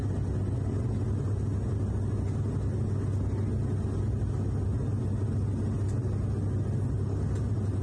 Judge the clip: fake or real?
real